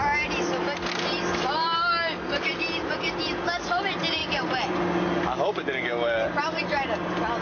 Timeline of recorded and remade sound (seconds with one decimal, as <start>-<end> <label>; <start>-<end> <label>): 0.0-2.3 recorded; 2.3-2.9 remade; 2.9-4.2 recorded; 4.2-4.8 remade; 4.8-7.4 recorded